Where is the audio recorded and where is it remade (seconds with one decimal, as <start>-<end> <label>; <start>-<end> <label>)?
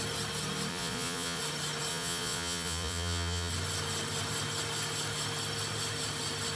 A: 0.0-0.7 recorded; 0.7-1.4 remade; 1.4-1.9 recorded; 1.9-3.5 remade; 3.5-6.6 recorded